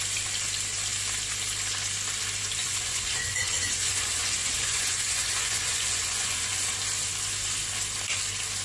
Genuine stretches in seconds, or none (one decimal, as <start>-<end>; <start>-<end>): 0.0-2.6; 6.6-8.6